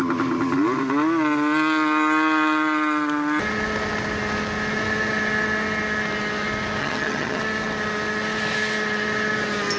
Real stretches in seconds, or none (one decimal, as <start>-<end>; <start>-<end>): 0.0-6.8; 7.4-9.8